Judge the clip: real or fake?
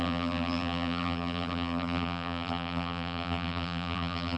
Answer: fake